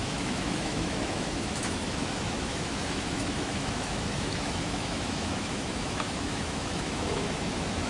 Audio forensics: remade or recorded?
remade